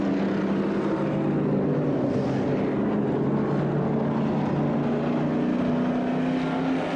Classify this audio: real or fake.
real